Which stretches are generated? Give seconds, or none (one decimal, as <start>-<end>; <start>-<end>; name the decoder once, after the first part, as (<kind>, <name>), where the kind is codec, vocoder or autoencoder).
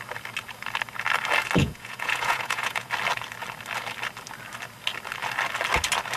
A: 1.6-2.9 (vocoder, Vocos)